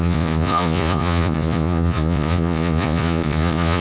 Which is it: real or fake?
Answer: fake